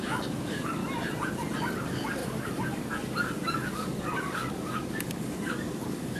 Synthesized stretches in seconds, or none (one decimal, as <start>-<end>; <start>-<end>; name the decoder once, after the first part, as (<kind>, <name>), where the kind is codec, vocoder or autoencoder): 0.0-0.8 (codec, DAC); 1.8-6.2